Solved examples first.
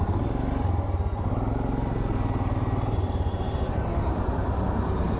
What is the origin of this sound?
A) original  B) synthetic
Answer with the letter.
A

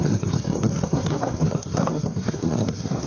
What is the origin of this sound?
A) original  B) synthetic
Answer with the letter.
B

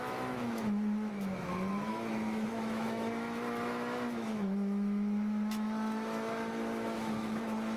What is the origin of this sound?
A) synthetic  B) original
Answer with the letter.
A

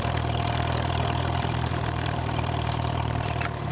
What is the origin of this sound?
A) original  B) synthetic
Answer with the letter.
B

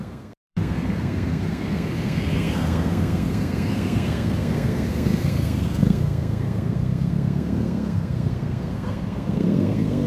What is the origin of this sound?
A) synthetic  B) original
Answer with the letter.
A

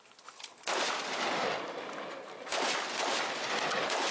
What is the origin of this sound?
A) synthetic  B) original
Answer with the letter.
B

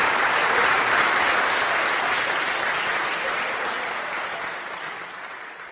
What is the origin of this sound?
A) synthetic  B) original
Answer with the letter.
B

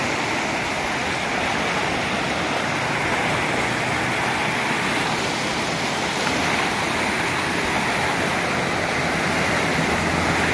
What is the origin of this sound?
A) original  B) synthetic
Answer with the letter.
A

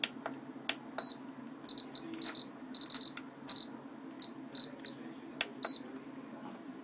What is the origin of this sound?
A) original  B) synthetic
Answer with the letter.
A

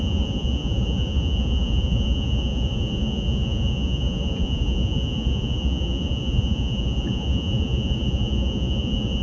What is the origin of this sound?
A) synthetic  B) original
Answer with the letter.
A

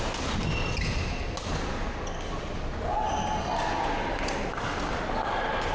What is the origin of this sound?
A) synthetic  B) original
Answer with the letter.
B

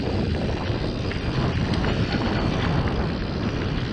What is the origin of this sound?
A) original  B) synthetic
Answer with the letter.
A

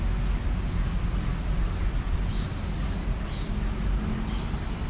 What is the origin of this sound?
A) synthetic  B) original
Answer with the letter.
B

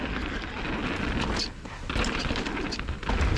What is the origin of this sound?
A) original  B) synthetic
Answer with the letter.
A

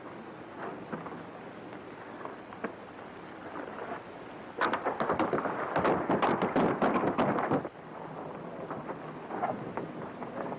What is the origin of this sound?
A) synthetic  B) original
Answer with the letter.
B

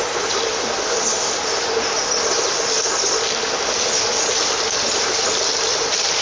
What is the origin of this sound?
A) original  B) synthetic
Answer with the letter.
A